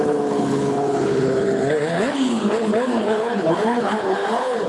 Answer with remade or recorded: remade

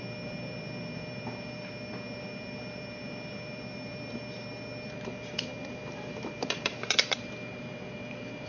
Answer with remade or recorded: remade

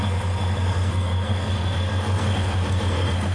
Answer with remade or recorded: remade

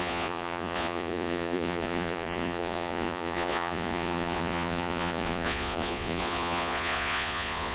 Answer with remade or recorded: remade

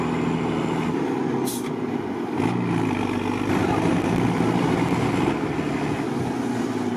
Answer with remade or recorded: recorded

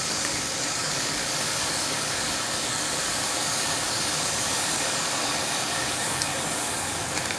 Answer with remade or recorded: remade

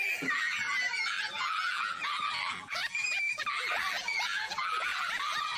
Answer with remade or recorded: remade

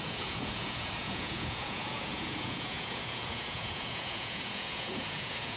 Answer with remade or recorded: remade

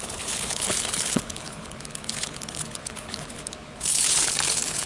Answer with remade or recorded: remade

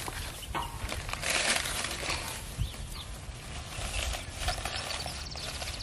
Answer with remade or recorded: recorded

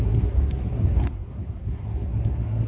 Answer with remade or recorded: remade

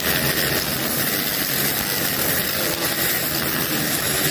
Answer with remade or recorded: recorded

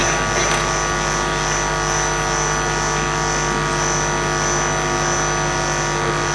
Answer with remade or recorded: recorded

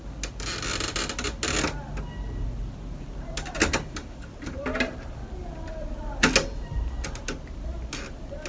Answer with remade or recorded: recorded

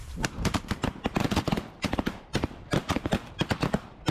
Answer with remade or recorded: remade